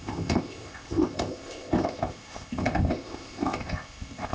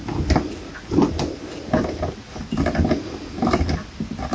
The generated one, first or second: first